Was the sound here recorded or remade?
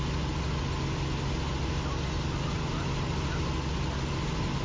recorded